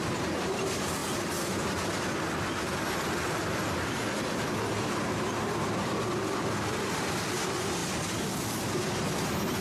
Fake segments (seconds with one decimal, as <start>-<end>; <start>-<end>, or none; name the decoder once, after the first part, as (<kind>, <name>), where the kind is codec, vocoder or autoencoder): none